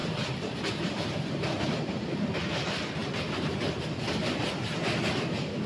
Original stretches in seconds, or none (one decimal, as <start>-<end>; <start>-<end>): 1.6-5.7